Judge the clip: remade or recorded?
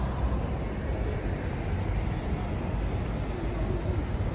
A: recorded